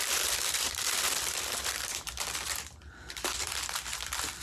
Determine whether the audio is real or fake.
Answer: fake